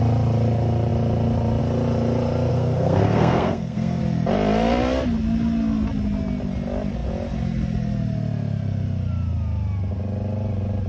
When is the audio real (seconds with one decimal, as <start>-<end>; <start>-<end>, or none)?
0.0-2.5; 4.0-10.9